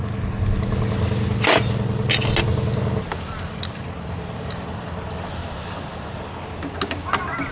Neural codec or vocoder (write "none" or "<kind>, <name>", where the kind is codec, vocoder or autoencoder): none